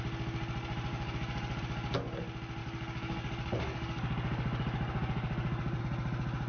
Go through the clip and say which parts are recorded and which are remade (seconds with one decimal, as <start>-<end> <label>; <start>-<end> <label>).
0.0-0.9 recorded; 0.9-1.6 remade; 1.6-2.6 recorded; 2.6-5.8 remade; 5.8-6.5 recorded